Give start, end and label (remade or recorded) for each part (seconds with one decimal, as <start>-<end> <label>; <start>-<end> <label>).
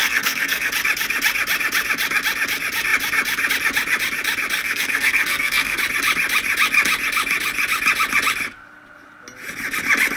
0.0-0.7 remade; 0.7-4.6 recorded; 4.6-5.8 remade; 5.8-10.2 recorded